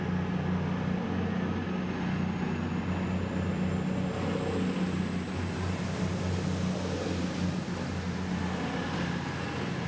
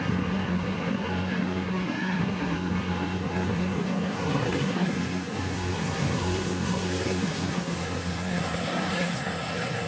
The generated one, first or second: second